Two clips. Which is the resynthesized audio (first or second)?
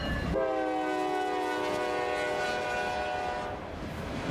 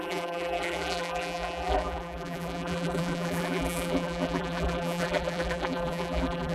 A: second